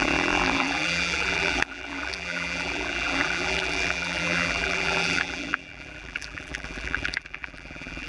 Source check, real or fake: fake